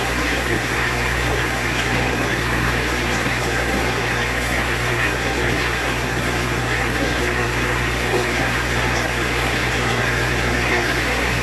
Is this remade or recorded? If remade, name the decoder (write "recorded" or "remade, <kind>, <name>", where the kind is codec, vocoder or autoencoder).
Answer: remade, codec, SNAC